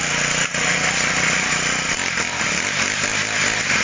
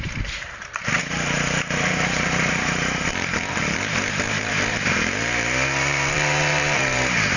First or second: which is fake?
second